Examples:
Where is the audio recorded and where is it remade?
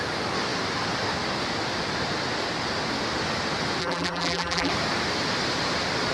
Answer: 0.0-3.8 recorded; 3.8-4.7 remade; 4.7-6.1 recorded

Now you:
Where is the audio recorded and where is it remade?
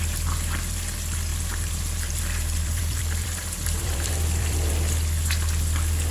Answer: 0.0-1.3 recorded; 1.3-4.7 remade; 4.7-6.1 recorded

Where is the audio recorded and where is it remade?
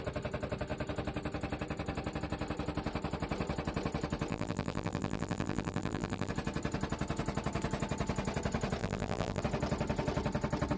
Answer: 0.0-4.3 recorded; 4.3-6.3 remade; 6.3-8.8 recorded; 8.8-9.4 remade; 9.4-10.8 recorded